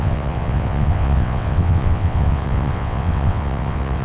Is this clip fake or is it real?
fake